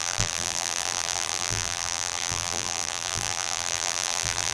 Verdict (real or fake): fake